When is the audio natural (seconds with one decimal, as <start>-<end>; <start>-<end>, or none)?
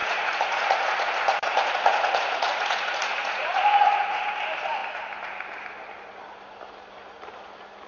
4.3-7.9